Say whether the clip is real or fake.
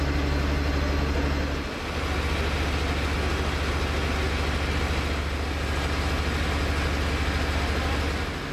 real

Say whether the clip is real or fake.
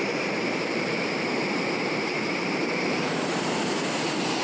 fake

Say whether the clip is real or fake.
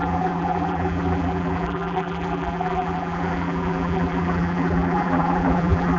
fake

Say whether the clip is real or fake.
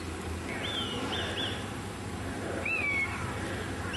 real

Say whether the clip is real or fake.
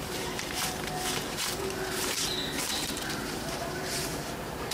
fake